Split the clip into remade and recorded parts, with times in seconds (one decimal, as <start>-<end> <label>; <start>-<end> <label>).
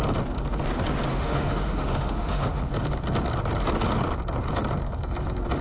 0.0-1.1 recorded; 1.1-2.6 remade; 2.6-5.6 recorded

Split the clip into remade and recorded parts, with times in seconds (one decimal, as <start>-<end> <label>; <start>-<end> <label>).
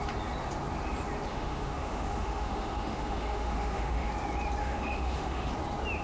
0.0-1.3 recorded; 1.3-4.1 remade; 4.1-4.6 recorded; 4.6-5.5 remade; 5.5-6.0 recorded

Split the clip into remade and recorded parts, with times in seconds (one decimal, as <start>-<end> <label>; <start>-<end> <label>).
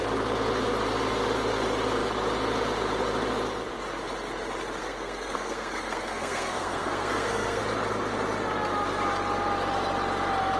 0.0-4.8 recorded; 4.8-7.6 remade; 7.6-10.6 recorded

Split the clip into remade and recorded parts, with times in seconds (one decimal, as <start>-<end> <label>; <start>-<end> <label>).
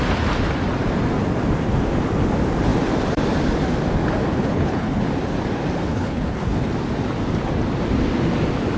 0.0-4.4 recorded; 4.4-5.0 remade; 5.0-5.9 recorded; 5.9-6.7 remade; 6.7-8.8 recorded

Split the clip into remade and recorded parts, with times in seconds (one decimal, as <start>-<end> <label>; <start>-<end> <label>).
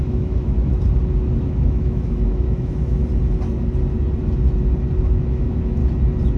0.0-0.7 remade; 0.7-1.4 recorded; 1.4-3.0 remade; 3.0-5.0 recorded; 5.0-5.8 remade; 5.8-6.4 recorded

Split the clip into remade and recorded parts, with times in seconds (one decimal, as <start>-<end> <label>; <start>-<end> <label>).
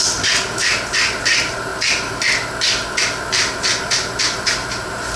0.0-5.2 recorded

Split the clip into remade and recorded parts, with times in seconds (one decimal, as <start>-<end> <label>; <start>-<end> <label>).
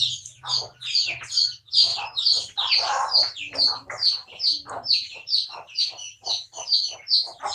0.0-1.9 recorded; 1.9-5.8 remade; 5.8-7.5 recorded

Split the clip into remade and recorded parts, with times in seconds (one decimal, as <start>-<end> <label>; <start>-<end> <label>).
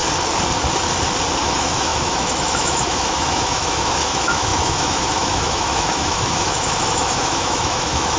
0.0-1.4 recorded; 1.4-8.2 remade